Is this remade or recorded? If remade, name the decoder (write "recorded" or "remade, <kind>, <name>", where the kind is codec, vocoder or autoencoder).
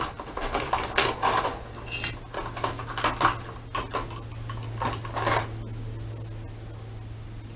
recorded